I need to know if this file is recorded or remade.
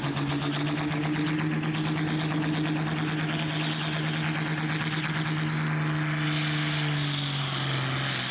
recorded